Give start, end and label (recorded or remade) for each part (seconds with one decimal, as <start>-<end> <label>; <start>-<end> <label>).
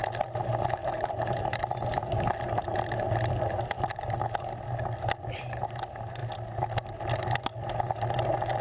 0.0-0.8 recorded; 0.8-1.6 remade; 1.6-8.6 recorded